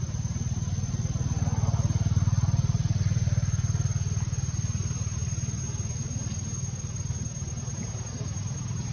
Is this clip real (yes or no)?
yes